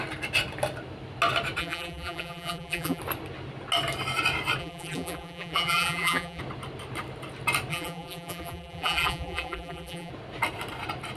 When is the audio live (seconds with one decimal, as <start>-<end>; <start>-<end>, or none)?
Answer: 0.0-1.6; 3.0-4.6; 6.4-7.7; 10.1-11.2